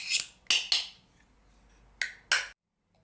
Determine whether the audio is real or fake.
real